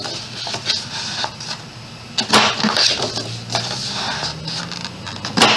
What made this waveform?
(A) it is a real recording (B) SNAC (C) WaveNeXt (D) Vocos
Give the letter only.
A